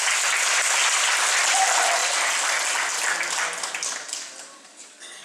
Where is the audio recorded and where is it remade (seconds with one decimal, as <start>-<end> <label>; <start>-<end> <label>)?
0.0-5.2 recorded